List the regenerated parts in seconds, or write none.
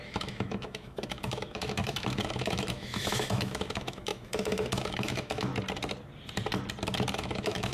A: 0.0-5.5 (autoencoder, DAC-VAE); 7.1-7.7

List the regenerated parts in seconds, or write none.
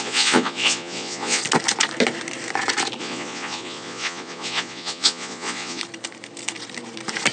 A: 0.0-1.4 (vocoder, Vocos); 3.0-5.8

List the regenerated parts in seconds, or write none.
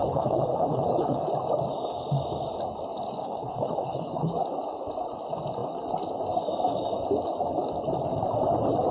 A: 0.0-1.3 (codec, HILCodec); 3.2-4.3